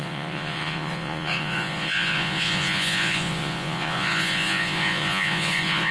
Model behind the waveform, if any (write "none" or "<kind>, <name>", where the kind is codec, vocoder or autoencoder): vocoder, Vocos